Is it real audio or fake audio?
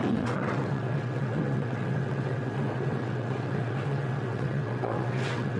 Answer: fake